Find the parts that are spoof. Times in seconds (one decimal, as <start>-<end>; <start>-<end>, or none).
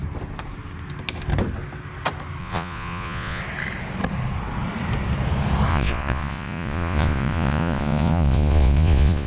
2.4-3.4; 5.7-9.3